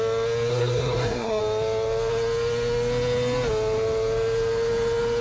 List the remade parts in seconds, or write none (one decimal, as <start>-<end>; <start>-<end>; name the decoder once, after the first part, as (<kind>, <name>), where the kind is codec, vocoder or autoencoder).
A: 0.5-1.4 (codec, SNAC)